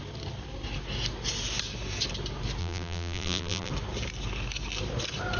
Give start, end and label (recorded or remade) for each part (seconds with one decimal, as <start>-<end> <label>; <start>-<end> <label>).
0.0-2.6 recorded; 2.6-3.7 remade; 3.7-5.4 recorded